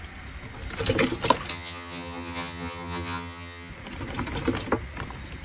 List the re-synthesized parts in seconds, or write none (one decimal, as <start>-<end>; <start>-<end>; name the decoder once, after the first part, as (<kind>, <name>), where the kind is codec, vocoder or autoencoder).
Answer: 1.5-3.7 (vocoder, HiFi-GAN)